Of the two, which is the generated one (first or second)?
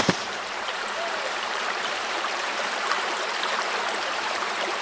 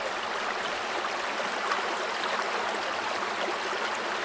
first